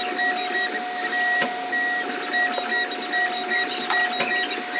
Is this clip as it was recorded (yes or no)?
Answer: yes